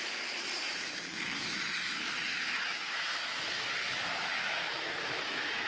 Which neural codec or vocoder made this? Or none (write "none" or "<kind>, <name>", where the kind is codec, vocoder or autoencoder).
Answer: autoencoder, DAC-VAE